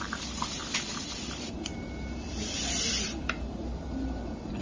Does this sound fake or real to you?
fake